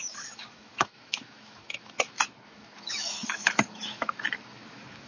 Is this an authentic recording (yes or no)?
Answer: no